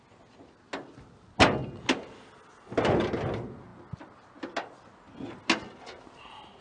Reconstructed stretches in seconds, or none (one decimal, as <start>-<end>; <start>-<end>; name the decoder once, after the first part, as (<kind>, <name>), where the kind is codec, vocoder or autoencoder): none